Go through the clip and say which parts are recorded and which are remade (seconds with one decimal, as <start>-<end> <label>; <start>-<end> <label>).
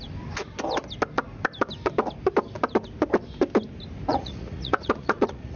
0.0-4.1 recorded; 4.1-5.6 remade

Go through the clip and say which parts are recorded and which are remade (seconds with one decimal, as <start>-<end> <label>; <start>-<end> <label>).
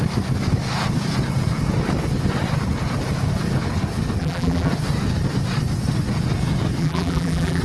0.0-4.2 recorded; 4.2-4.7 remade; 4.7-6.8 recorded; 6.8-7.6 remade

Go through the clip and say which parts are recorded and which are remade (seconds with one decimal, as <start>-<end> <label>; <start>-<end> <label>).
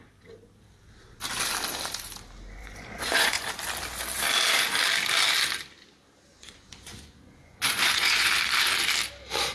0.0-2.6 recorded; 2.6-3.5 remade; 3.5-6.3 recorded; 6.3-8.3 remade; 8.3-9.5 recorded